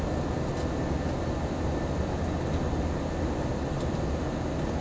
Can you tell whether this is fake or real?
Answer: real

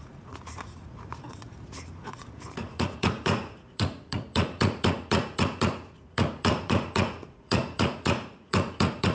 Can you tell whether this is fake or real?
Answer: fake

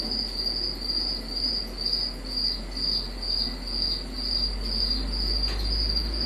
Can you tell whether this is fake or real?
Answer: real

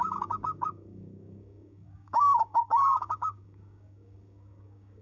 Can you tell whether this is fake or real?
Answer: fake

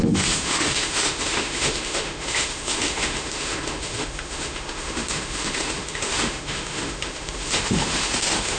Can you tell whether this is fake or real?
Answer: fake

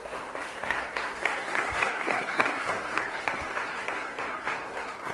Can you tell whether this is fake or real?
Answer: fake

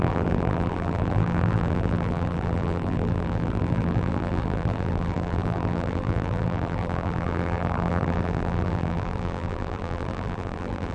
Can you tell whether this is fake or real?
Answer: fake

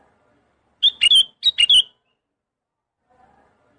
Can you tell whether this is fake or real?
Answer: real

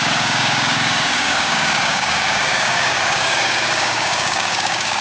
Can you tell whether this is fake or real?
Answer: fake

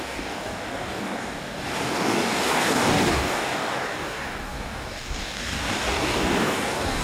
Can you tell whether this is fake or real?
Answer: fake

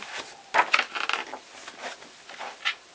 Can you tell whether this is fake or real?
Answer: real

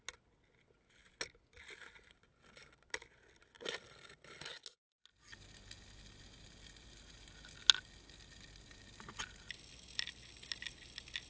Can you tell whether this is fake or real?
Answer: real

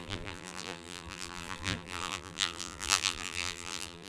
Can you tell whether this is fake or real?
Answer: fake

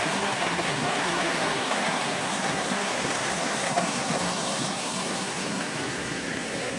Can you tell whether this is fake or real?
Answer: fake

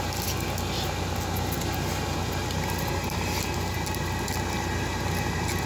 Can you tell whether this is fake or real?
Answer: real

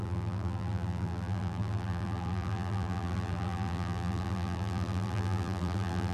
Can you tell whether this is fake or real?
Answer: fake